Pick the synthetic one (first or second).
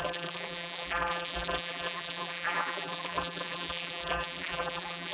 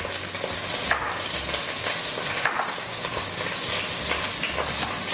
first